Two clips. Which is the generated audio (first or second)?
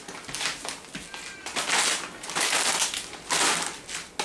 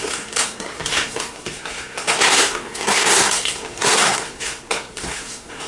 second